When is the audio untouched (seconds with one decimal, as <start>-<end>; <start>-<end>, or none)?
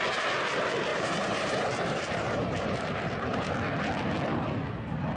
0.0-0.9; 3.5-5.2